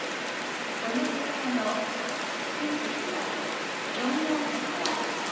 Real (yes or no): yes